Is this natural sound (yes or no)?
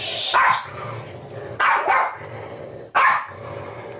yes